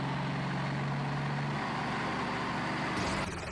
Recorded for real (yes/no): yes